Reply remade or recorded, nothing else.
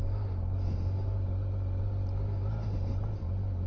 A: recorded